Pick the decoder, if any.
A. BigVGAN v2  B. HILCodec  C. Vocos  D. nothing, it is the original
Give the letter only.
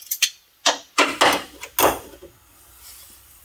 D